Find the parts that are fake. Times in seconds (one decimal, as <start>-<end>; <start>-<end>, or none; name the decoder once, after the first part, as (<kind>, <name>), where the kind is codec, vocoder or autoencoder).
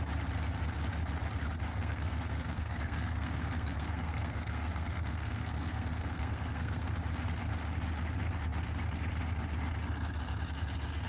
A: 1.7-6.9 (codec, SNAC)